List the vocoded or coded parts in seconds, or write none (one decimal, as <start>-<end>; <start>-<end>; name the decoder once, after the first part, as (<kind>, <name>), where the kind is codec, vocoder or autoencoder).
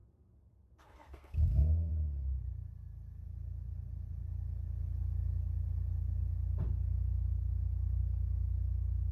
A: 0.0-1.9 (codec, SNAC)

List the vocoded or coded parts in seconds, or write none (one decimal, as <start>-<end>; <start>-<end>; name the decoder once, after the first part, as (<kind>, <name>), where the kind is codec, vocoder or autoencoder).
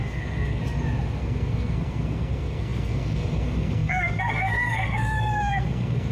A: 0.0-0.6 (codec, SNAC); 1.2-6.1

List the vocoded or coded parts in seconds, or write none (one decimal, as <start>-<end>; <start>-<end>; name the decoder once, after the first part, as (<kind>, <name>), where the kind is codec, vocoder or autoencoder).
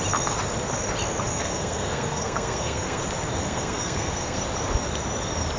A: 1.3-3.0 (codec, SNAC); 3.4-4.4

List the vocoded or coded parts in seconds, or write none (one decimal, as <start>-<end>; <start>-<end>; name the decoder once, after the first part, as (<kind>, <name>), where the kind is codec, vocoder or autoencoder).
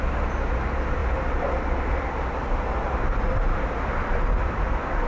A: none